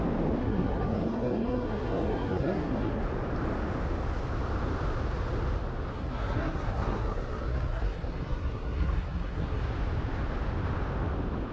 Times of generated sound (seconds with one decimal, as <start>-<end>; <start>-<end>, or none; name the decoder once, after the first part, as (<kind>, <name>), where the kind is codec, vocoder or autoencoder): 0.4-3.0 (codec, SNAC); 5.9-9.6